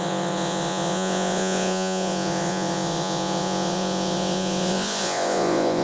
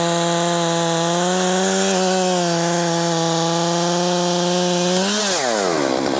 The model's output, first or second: first